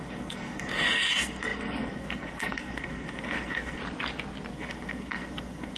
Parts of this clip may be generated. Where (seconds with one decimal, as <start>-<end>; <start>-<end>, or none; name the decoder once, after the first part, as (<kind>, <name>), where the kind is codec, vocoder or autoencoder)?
0.0-3.8 (codec, SNAC); 4.5-5.8